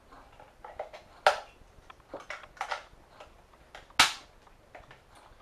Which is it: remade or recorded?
recorded